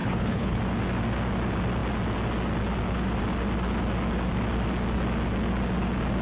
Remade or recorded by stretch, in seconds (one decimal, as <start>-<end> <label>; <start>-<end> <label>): 0.0-0.6 remade; 0.6-6.2 recorded